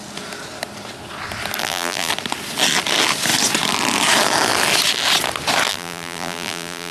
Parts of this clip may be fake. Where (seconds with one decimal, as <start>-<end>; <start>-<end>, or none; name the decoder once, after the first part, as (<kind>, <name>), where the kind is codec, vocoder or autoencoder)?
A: 1.6-2.1 (vocoder, BigVGAN v2); 5.7-6.9